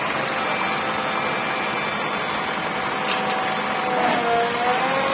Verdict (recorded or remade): recorded